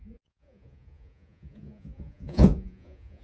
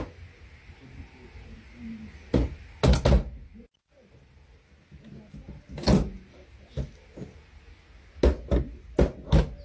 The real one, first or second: second